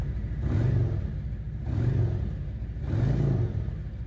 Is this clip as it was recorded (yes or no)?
yes